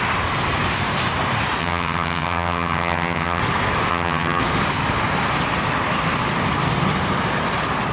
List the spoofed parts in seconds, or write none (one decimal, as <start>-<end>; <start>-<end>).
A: 1.6-3.4; 3.9-4.4